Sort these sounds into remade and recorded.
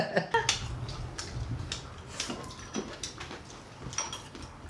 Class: recorded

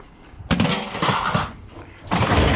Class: recorded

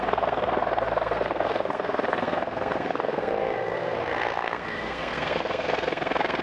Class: remade